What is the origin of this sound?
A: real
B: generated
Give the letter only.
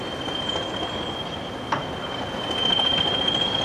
A